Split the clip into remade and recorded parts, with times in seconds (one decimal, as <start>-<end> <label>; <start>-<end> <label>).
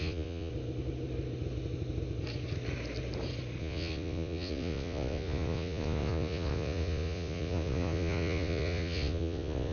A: 0.0-0.5 remade; 0.5-3.6 recorded; 3.6-9.7 remade